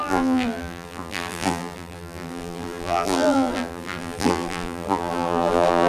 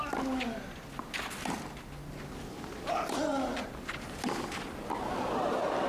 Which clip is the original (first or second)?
second